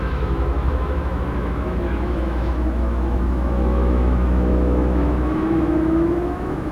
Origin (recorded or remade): remade